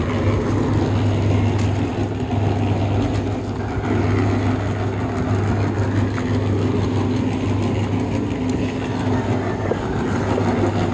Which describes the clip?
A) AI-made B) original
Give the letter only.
B